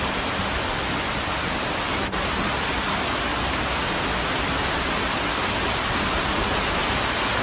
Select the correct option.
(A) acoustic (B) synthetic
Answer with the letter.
A